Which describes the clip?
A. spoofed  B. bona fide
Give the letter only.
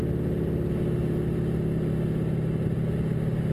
B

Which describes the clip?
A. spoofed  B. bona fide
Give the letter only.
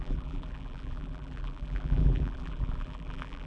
A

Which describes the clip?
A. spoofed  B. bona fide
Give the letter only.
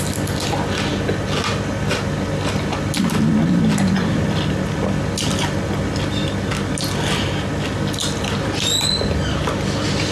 B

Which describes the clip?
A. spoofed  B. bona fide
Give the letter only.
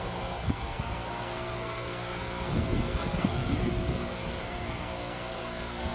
A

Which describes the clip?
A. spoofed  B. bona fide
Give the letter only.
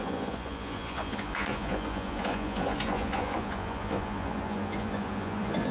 A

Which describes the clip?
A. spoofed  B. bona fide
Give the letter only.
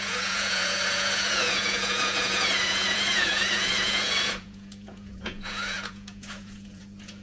A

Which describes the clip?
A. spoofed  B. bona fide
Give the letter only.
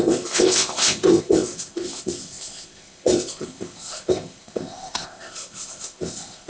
A